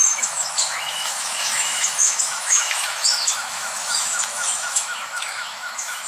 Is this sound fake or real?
fake